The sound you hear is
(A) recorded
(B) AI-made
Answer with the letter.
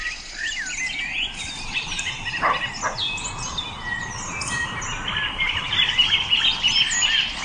A